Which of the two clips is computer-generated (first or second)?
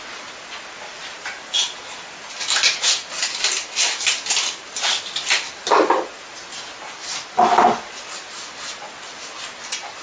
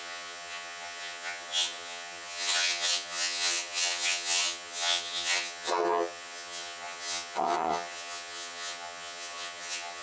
second